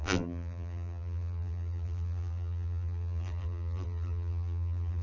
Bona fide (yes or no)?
no